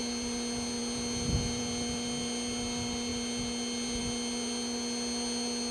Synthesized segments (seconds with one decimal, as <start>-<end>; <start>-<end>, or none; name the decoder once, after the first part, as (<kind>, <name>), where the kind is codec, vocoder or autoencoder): none